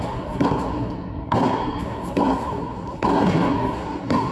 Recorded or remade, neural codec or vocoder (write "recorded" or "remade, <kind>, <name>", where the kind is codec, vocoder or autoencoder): remade, codec, SNAC